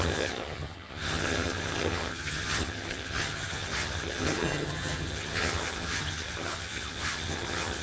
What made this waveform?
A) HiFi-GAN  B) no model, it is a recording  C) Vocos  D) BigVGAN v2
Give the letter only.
A